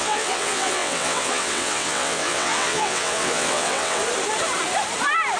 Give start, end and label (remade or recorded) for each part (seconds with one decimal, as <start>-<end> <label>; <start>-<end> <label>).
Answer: 0.0-4.0 remade; 4.0-5.4 recorded